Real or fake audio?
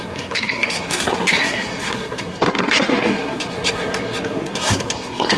fake